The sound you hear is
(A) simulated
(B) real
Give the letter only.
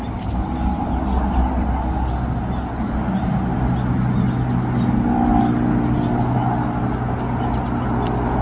B